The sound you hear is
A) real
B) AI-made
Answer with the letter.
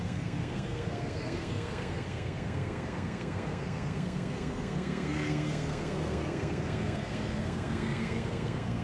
B